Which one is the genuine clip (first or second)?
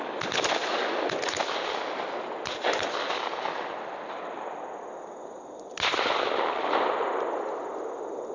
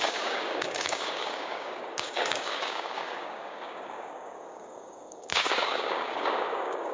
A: first